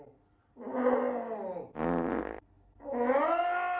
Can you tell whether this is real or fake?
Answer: real